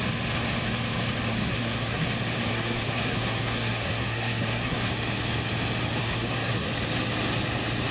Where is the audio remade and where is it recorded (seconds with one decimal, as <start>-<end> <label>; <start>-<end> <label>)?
0.0-1.3 recorded; 1.3-2.1 remade; 2.1-2.5 recorded; 2.5-4.9 remade; 4.9-6.0 recorded; 6.0-6.7 remade; 6.7-7.9 recorded